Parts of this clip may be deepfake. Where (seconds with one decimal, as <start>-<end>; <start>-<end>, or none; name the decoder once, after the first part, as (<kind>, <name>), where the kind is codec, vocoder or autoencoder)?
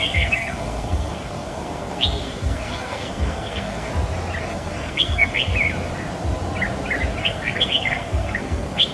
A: 0.0-3.9 (codec, SNAC); 4.4-5.5; 7.2-8.9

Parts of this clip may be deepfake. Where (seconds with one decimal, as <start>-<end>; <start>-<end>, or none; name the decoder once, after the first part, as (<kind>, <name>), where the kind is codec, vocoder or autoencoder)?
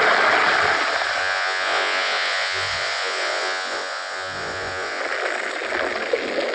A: 1.2-5.0 (vocoder, Vocos)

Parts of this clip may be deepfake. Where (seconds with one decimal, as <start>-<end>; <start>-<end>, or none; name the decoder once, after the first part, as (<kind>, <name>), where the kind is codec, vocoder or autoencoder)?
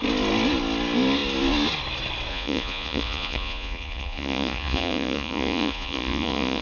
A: 2.3-6.6 (vocoder, Vocos)